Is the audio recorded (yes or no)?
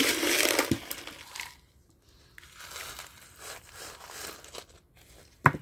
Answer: yes